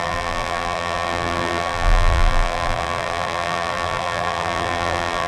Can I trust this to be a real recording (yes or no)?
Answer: no